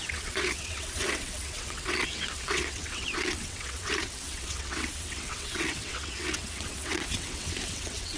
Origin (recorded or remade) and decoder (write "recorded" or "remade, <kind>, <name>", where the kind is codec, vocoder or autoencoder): remade, vocoder, WaveNeXt